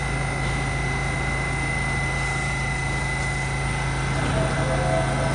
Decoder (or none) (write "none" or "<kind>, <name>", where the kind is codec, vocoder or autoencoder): none